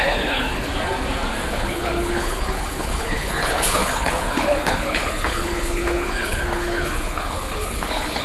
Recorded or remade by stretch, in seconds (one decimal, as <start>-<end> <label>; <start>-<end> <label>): 0.0-0.7 remade; 0.7-1.5 recorded; 1.5-8.2 remade